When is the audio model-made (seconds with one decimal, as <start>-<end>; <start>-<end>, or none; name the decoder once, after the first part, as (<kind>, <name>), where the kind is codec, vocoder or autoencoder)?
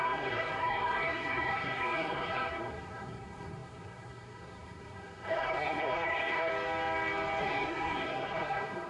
0.0-6.5 (codec, SNAC); 7.4-8.9